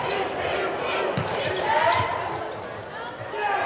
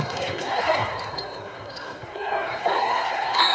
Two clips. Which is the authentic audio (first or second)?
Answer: first